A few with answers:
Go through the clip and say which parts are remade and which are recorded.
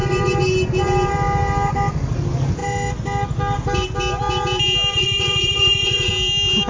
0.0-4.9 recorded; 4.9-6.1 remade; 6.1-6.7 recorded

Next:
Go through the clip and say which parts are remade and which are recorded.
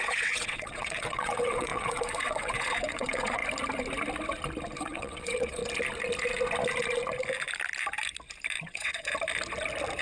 0.0-3.4 remade; 3.4-4.8 recorded; 4.8-5.6 remade; 5.6-8.6 recorded; 8.6-9.1 remade; 9.1-10.0 recorded